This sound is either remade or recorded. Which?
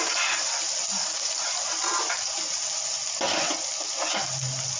recorded